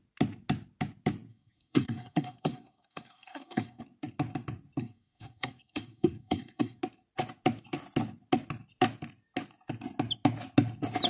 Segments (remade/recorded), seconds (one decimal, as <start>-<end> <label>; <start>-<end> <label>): 0.0-1.3 recorded; 1.3-3.8 remade; 3.8-4.8 recorded; 4.8-6.8 remade; 6.8-11.1 recorded